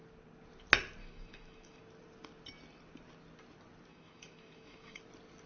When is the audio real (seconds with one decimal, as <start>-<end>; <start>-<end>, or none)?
0.0-1.0; 1.8-3.9; 5.0-5.5